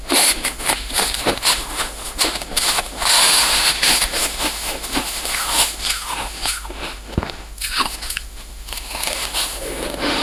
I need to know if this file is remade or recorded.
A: remade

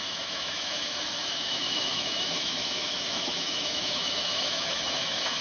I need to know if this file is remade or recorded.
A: remade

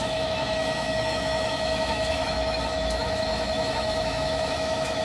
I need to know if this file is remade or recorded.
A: remade